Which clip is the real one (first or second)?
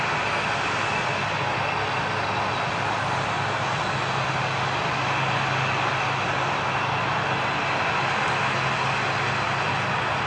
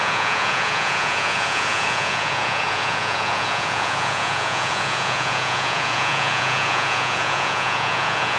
first